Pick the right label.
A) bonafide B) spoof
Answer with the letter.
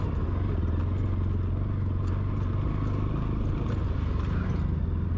A